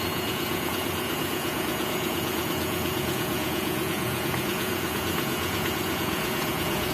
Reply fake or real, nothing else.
fake